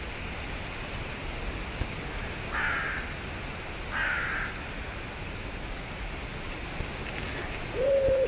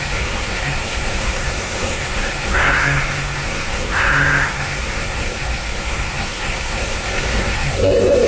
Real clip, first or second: first